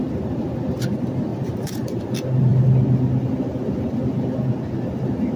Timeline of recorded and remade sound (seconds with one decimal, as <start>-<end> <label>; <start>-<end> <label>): 0.0-1.3 recorded; 1.3-2.0 remade; 2.0-5.4 recorded